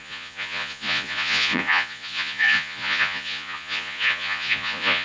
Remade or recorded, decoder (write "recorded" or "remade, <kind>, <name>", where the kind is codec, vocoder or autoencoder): remade, vocoder, Vocos